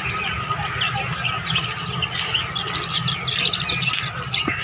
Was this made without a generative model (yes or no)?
yes